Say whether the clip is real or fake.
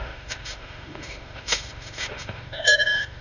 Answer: fake